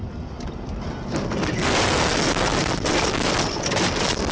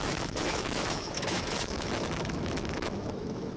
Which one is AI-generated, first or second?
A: second